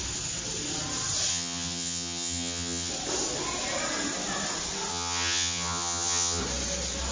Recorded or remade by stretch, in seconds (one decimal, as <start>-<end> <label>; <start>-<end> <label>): 0.0-1.3 recorded; 1.3-2.9 remade; 2.9-4.9 recorded; 4.9-6.4 remade; 6.4-7.1 recorded